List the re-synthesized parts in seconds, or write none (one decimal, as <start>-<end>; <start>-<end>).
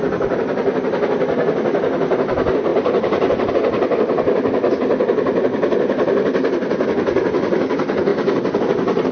2.7-3.5